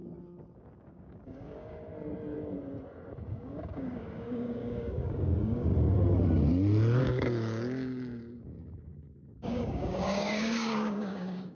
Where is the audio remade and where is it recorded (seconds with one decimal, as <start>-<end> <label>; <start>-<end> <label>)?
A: 0.0-0.9 recorded; 0.9-1.9 remade; 1.9-3.2 recorded; 3.2-5.7 remade; 5.7-7.0 recorded; 7.0-11.5 remade